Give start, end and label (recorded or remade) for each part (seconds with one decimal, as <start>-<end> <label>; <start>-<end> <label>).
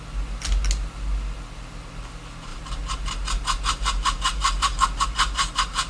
0.0-2.5 recorded; 2.5-5.9 remade